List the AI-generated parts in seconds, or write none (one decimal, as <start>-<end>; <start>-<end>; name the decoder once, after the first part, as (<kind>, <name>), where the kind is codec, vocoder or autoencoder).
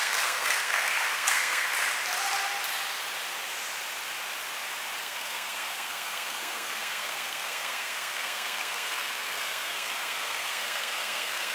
0.0-1.7 (codec, SNAC); 5.0-11.5